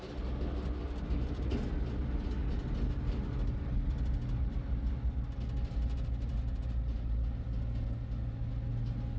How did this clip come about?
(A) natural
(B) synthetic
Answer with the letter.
A